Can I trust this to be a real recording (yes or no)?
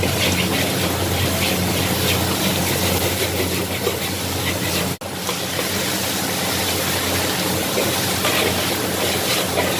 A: yes